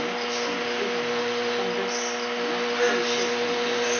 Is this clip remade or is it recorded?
recorded